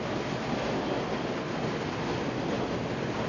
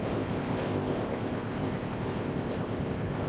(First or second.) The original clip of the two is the first